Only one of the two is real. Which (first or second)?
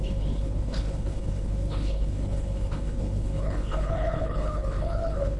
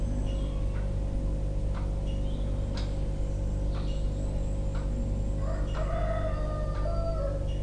second